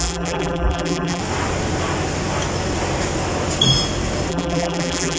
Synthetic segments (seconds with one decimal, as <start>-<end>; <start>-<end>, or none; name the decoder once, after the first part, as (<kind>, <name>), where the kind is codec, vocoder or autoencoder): 0.0-1.2 (vocoder, BigVGAN v2); 4.3-5.2